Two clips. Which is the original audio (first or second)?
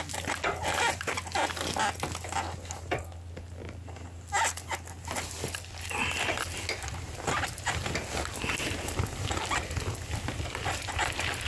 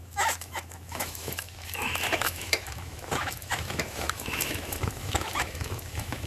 first